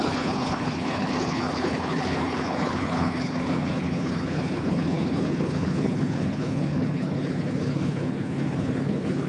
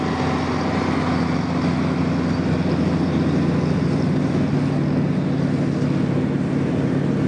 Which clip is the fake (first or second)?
first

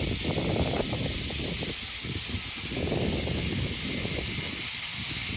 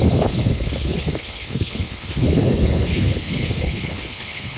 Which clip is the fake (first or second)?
second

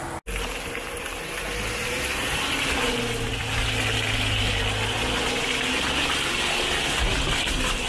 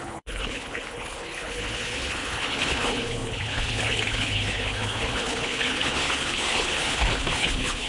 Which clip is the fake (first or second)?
second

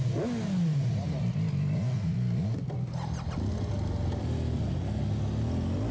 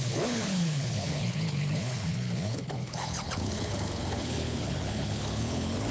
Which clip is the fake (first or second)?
second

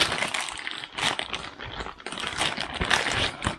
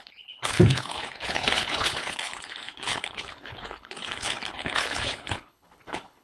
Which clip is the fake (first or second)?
second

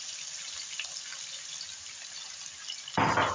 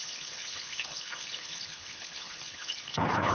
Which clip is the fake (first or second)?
second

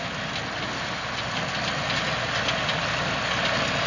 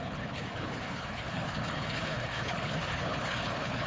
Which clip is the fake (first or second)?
second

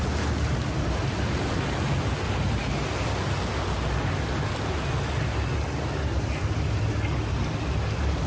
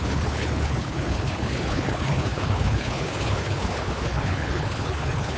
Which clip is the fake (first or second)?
second